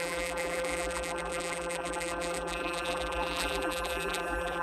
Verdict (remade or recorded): remade